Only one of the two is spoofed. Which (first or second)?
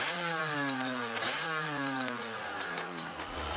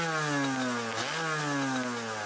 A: first